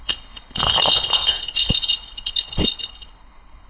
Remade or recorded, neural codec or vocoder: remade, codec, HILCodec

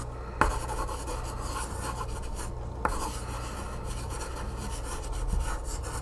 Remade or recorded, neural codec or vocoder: recorded